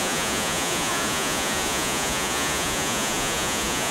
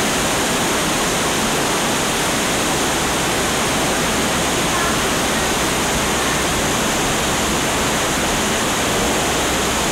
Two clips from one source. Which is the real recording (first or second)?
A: second